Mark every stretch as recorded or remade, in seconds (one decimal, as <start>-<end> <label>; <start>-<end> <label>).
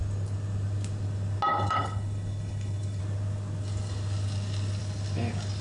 0.0-1.5 recorded; 1.5-3.0 remade; 3.0-5.6 recorded